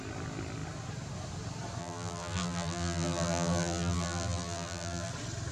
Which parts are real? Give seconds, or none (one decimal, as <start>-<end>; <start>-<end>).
0.0-1.8; 5.1-5.5